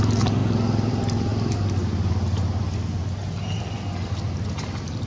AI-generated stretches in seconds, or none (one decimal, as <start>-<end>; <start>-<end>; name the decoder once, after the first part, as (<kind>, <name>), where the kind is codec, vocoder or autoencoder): none